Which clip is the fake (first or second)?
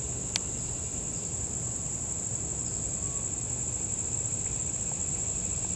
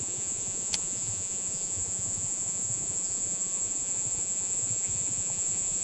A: second